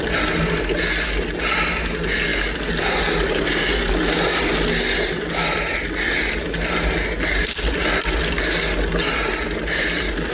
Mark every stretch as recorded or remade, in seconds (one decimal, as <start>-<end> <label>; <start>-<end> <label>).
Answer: 0.0-10.3 recorded